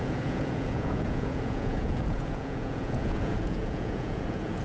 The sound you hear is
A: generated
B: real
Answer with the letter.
A